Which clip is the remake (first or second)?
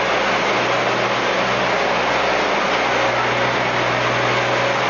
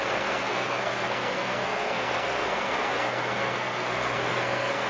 second